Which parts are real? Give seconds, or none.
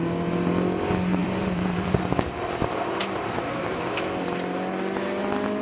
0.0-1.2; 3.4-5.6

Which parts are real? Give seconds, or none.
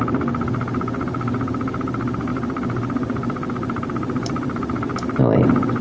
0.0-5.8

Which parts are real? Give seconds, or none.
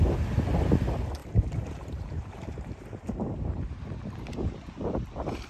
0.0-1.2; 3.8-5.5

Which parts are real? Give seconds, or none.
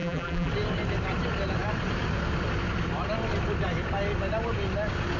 0.5-5.2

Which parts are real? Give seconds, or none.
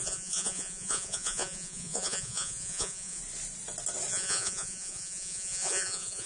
3.2-4.1